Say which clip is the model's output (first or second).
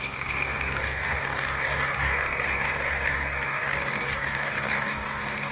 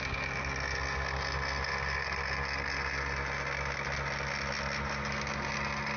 first